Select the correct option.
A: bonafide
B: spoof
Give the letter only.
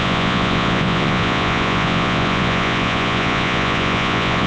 B